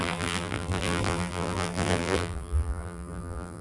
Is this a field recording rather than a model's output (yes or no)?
no